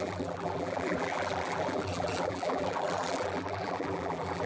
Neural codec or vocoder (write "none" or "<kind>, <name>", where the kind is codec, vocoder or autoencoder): vocoder, BigVGAN v2